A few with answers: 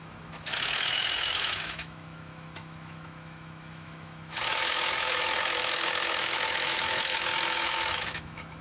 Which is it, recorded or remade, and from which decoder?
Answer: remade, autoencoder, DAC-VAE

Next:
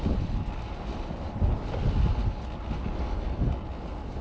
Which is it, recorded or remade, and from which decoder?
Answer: recorded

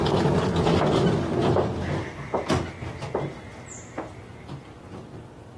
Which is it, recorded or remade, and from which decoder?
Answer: recorded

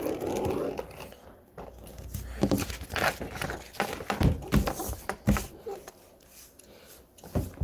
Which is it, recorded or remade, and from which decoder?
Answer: recorded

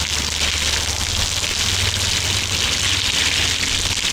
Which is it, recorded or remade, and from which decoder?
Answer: recorded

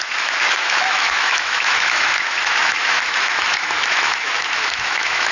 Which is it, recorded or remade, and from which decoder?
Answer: remade, autoencoder, DAC-VAE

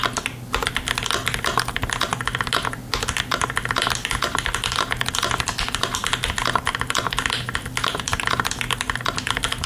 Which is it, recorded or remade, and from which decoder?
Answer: recorded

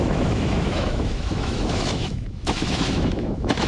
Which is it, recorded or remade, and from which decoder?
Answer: remade, autoencoder, DAC-VAE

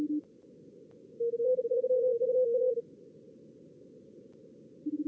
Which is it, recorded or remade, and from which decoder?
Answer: recorded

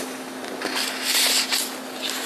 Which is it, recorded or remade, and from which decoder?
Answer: recorded